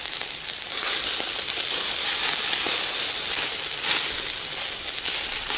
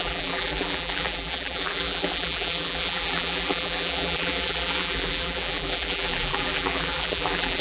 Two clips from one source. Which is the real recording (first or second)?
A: first